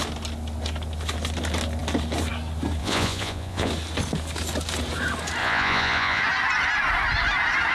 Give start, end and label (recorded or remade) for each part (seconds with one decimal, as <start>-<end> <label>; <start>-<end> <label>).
0.0-2.8 recorded; 2.8-3.7 remade; 3.7-5.4 recorded; 5.4-6.2 remade; 6.2-7.7 recorded